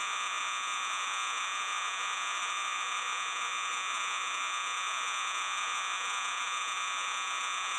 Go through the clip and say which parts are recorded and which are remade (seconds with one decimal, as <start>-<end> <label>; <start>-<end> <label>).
0.0-7.8 remade